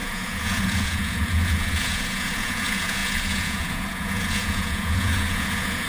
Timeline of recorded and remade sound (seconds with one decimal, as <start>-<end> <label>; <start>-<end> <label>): 0.0-5.9 remade